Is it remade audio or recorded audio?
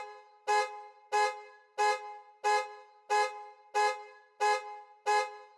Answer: recorded